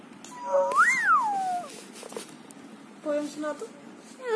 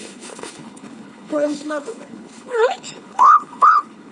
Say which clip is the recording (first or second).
first